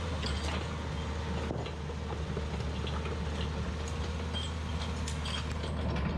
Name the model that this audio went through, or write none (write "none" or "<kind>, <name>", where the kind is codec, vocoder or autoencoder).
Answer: none